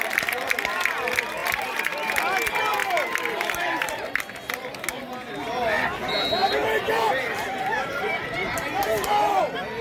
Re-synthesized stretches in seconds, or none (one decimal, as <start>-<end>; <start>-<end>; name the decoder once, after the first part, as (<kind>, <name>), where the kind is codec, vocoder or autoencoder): 1.4-2.2 (vocoder, BigVGAN v2); 2.8-4.2; 6.4-9.4